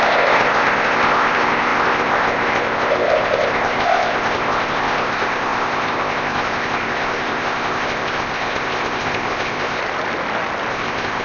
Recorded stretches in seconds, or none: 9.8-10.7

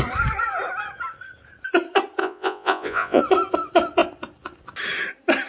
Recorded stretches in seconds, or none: 0.0-2.2; 3.2-5.5

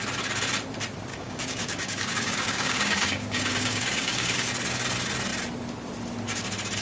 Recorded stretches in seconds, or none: 0.0-1.1; 4.5-6.8